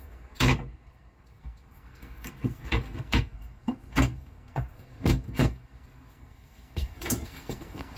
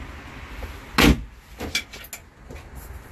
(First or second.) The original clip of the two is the second